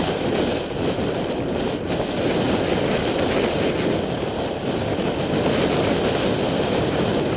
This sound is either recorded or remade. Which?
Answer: recorded